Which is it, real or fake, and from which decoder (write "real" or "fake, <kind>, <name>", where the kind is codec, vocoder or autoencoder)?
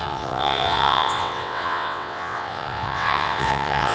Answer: fake, vocoder, WaveNeXt